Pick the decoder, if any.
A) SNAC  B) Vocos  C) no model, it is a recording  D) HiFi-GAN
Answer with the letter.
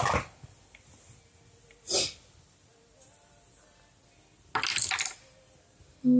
C